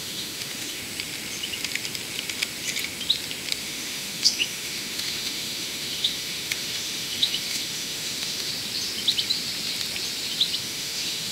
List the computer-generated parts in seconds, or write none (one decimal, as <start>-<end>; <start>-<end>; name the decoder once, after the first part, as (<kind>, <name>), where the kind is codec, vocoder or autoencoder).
0.0-0.8 (autoencoder, DAC-VAE); 3.6-8.5; 10.6-11.3